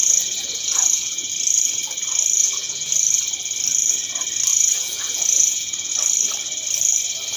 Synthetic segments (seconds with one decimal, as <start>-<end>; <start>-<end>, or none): 0.0-1.3; 2.4-2.9; 4.5-5.9